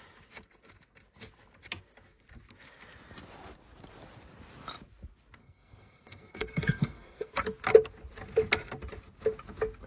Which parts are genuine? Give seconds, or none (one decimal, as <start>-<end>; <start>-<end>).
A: 0.0-5.4; 7.3-9.9